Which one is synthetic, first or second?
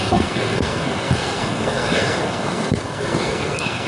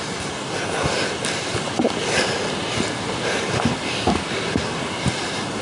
first